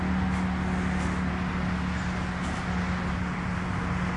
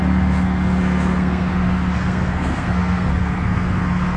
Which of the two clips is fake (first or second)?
second